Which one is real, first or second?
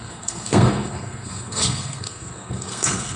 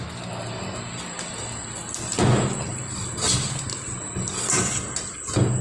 second